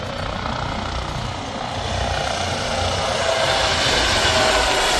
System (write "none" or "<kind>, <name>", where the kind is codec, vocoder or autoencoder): none